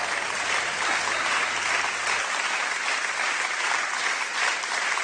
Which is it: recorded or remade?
recorded